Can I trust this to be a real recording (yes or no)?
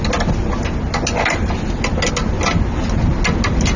yes